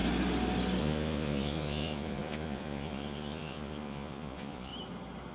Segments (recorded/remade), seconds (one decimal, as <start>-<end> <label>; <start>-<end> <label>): 0.0-0.8 recorded; 0.8-4.7 remade; 4.7-5.3 recorded